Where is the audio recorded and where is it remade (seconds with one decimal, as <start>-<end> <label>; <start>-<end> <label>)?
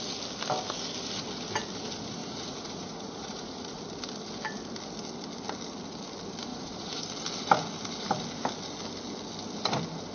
0.0-2.2 recorded; 2.2-3.8 remade; 3.8-6.5 recorded; 6.5-7.0 remade; 7.0-10.1 recorded